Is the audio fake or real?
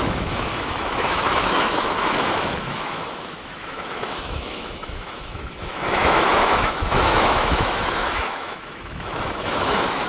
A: fake